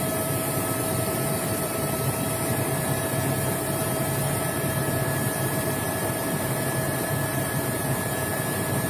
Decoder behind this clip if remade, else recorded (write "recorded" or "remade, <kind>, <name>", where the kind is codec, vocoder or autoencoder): remade, vocoder, BigVGAN v2